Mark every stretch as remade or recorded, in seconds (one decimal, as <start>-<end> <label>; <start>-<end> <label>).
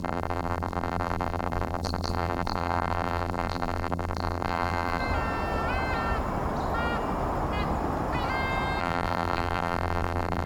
0.0-5.0 remade; 5.0-8.8 recorded; 8.8-10.5 remade